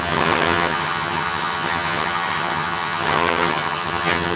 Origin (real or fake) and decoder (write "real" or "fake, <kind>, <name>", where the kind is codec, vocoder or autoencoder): fake, vocoder, HiFi-GAN